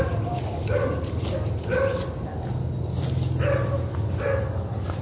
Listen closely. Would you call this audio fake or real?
real